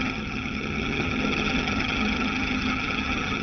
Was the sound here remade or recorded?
remade